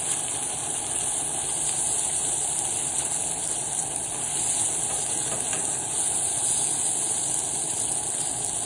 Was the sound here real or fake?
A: real